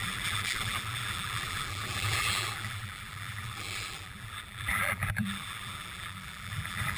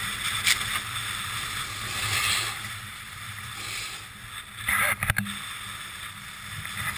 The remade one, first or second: first